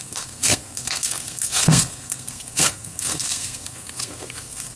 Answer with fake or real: fake